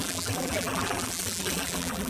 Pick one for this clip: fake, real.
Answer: fake